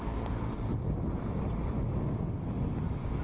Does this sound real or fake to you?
real